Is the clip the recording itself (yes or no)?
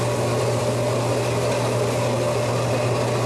yes